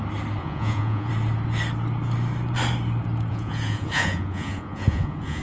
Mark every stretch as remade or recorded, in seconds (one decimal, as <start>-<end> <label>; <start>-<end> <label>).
0.0-0.4 recorded; 0.4-1.1 remade; 1.1-3.3 recorded; 3.3-5.4 remade